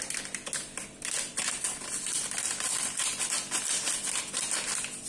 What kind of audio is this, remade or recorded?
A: recorded